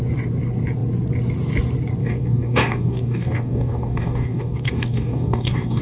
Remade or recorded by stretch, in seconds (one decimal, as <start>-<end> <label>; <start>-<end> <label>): 0.0-2.0 recorded; 2.0-5.8 remade